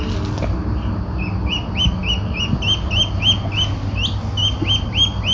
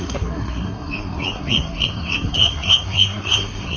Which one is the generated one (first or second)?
second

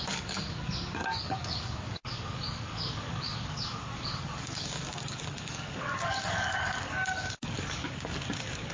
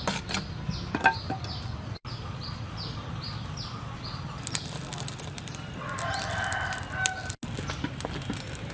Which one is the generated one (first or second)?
first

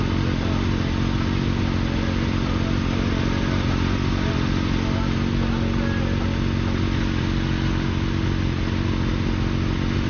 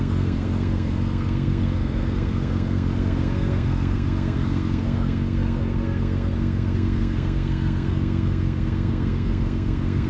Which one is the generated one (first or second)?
second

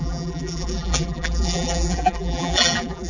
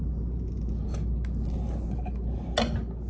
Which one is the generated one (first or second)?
first